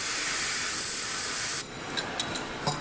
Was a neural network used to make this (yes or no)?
no